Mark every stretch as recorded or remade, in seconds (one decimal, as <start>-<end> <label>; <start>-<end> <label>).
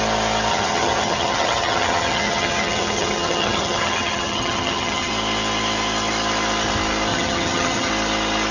0.0-0.5 recorded; 0.5-5.1 remade; 5.1-7.1 recorded; 7.1-7.9 remade; 7.9-8.5 recorded